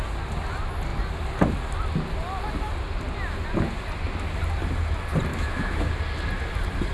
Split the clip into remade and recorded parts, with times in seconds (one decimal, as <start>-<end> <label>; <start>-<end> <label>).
0.0-5.3 recorded; 5.3-5.9 remade; 5.9-6.9 recorded